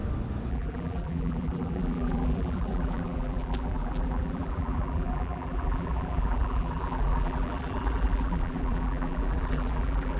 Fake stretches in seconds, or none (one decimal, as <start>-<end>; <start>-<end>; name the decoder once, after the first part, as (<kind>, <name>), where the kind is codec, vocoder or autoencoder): 0.5-10.2 (vocoder, BigVGAN v2)